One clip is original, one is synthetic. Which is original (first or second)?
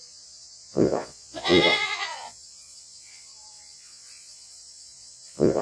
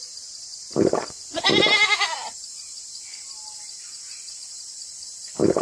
second